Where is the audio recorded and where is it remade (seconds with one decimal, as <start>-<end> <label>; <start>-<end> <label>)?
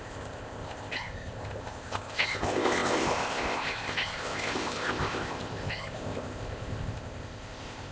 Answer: 0.0-7.9 remade